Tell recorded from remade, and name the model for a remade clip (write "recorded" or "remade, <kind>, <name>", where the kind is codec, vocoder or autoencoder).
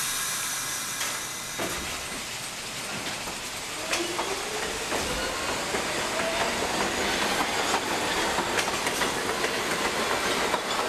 recorded